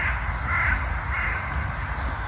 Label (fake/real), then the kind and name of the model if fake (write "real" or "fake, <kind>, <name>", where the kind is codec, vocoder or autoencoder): real